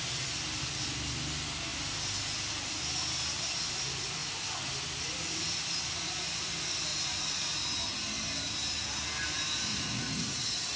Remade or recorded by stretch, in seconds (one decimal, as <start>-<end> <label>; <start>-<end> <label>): 0.0-6.9 recorded; 6.9-7.6 remade; 7.6-9.7 recorded; 9.7-10.4 remade; 10.4-10.8 recorded